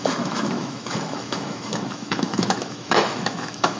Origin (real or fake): fake